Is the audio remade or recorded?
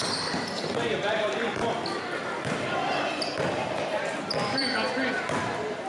remade